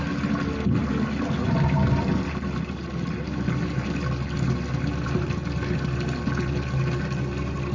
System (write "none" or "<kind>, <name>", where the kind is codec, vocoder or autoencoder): none